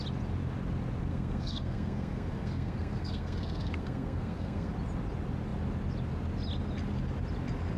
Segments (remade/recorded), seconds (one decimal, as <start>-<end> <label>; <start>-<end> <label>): 0.0-1.1 recorded; 1.1-4.7 remade; 4.7-7.8 recorded